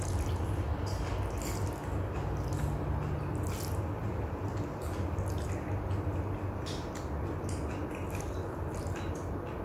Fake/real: real